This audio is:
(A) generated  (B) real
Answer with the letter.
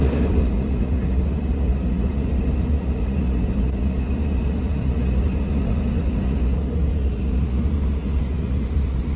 A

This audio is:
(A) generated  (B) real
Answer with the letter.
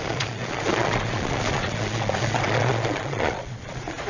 A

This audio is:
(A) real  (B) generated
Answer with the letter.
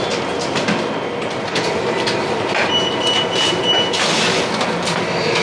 A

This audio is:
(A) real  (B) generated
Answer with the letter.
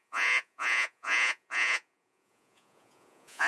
B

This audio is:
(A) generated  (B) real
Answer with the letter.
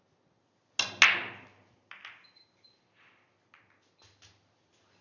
B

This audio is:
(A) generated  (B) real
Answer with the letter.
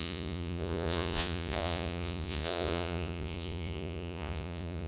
A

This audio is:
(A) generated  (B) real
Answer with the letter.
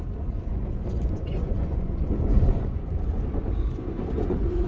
A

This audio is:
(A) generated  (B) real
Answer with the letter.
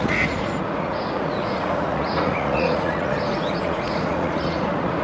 A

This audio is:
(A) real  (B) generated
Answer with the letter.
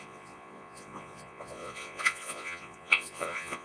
B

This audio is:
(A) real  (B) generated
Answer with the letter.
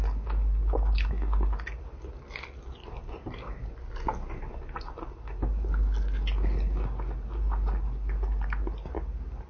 A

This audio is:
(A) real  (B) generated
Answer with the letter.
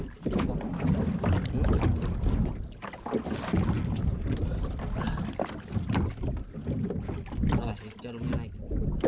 A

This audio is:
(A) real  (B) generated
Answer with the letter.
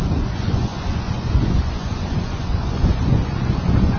B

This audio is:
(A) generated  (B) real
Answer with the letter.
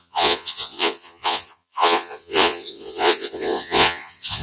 A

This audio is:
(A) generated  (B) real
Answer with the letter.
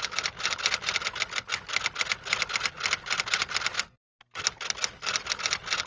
B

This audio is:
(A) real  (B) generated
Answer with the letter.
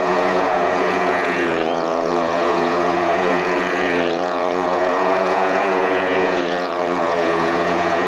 B